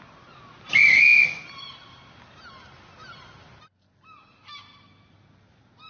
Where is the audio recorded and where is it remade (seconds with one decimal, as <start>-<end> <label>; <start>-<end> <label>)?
0.0-5.9 recorded